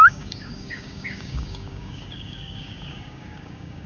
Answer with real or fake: fake